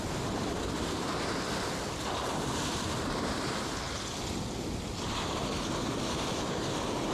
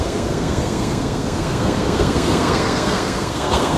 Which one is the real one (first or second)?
first